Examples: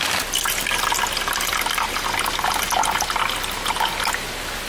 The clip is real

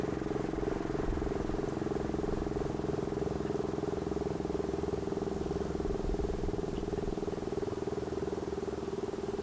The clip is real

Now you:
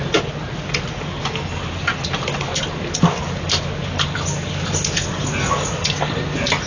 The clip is real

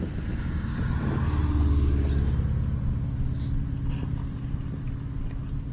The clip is real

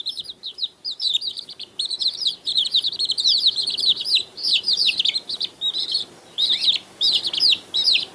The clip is fake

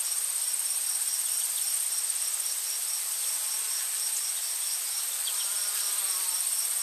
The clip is real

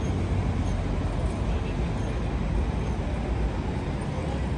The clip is real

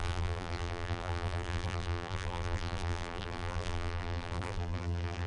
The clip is fake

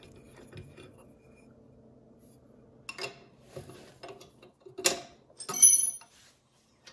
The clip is real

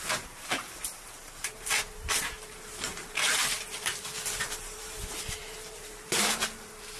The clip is fake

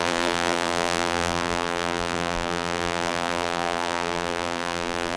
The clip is fake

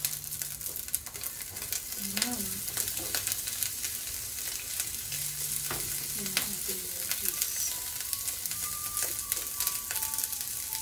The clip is real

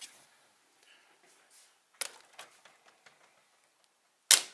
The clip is real